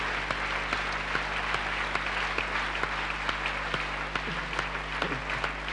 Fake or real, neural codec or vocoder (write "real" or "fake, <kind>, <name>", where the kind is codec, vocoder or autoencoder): real